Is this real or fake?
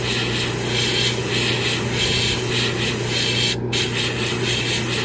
real